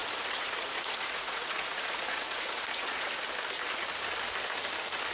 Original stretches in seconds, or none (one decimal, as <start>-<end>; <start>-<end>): 3.1-5.1

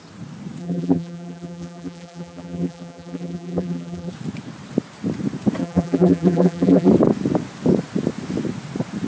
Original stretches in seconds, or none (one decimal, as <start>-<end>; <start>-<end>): 0.0-0.6; 4.1-5.6; 6.9-9.1

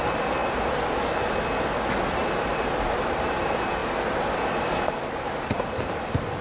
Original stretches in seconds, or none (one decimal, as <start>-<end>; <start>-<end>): 0.0-6.4

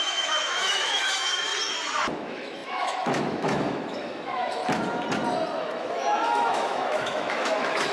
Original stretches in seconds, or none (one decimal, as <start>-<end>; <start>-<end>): 1.5-2.1; 4.6-5.6

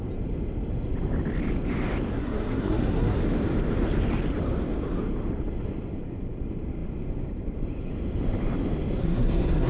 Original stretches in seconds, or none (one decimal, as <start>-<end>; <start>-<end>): 0.0-2.1; 3.2-9.0

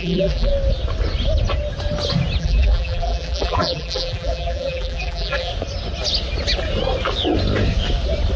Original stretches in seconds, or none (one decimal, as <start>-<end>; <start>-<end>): 0.5-2.4; 5.5-8.4

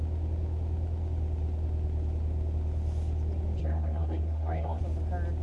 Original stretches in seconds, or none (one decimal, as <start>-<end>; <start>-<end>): 0.0-3.6; 4.8-5.4